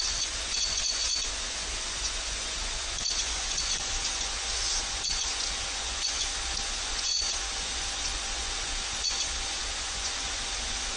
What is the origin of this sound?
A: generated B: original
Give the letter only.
A